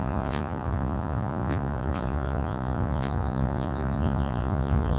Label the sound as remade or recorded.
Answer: remade